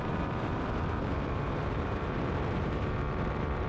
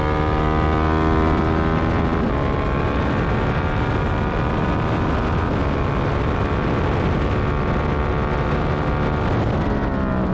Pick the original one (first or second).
second